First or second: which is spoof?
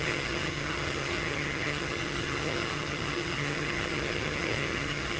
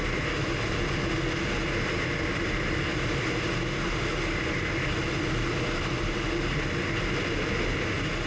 first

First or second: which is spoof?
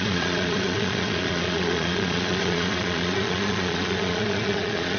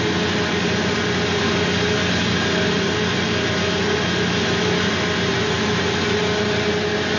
first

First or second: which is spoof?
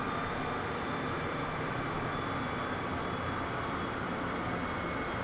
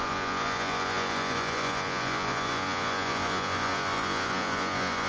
second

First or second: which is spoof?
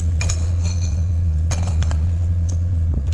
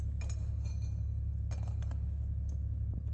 first